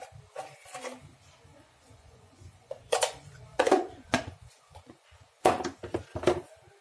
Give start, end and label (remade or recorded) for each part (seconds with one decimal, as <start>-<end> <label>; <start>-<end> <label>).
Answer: 0.0-1.5 recorded; 1.5-5.6 remade; 5.6-6.8 recorded